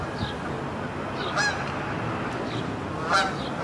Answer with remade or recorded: recorded